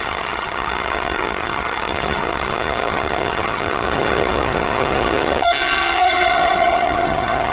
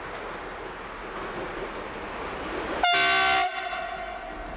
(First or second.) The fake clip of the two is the first